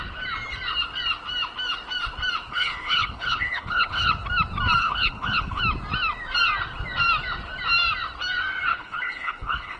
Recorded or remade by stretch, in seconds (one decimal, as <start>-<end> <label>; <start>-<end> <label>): 0.0-2.5 recorded; 2.5-4.1 remade; 4.1-4.8 recorded; 4.8-5.6 remade; 5.6-8.7 recorded; 8.7-9.8 remade